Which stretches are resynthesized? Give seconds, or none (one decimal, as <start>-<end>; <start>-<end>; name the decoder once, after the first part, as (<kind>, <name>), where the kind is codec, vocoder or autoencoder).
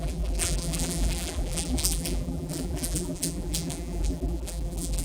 0.0-5.0 (vocoder, BigVGAN v2)